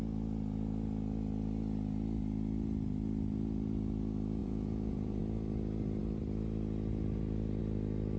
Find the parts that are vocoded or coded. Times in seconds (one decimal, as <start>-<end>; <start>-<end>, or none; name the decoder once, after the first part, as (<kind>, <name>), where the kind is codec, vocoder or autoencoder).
4.4-5.2 (vocoder, Vocos)